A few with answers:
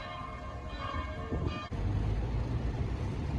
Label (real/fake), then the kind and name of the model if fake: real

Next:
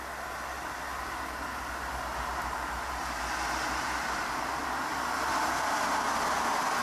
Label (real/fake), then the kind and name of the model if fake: real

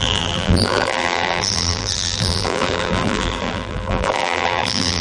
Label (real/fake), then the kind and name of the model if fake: fake, vocoder, BigVGAN v2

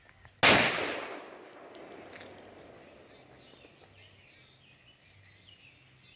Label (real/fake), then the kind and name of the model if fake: real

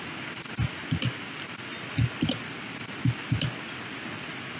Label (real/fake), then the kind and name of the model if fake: real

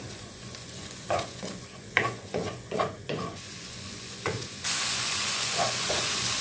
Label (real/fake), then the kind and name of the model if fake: fake, vocoder, Vocos